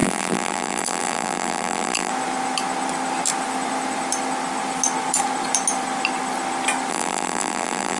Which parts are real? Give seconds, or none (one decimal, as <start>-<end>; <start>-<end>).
2.1-6.9